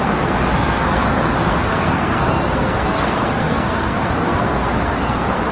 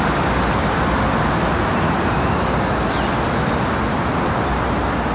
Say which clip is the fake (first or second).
first